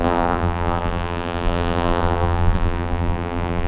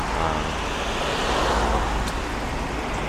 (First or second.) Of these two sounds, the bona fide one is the second